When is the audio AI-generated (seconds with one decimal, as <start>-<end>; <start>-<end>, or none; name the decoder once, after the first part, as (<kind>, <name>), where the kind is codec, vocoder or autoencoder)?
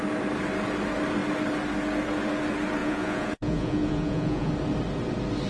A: 2.8-4.5 (vocoder, Vocos)